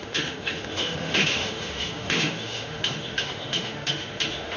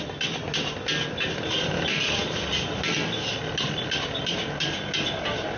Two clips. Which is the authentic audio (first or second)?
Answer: second